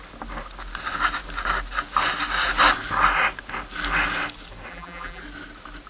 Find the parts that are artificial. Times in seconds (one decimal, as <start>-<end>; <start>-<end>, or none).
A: 4.7-5.2